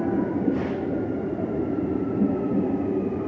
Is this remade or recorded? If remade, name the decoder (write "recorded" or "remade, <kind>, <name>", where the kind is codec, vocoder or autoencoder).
recorded